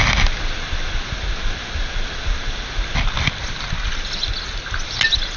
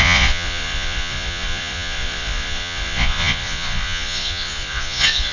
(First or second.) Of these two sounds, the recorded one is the first